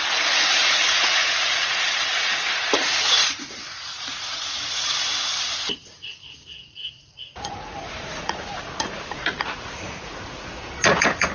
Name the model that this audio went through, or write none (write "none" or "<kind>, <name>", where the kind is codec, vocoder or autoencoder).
vocoder, Vocos